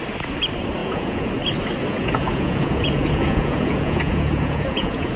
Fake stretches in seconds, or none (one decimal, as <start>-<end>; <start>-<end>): 0.8-1.3; 1.9-5.2